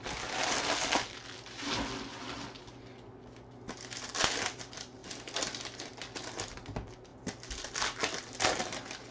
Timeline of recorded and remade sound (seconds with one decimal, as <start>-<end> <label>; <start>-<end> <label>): 0.0-9.1 recorded